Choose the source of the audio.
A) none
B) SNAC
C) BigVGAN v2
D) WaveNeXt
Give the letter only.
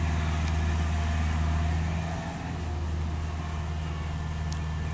A